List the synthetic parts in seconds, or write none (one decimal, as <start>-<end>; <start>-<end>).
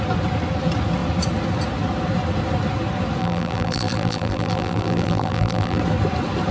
3.2-5.8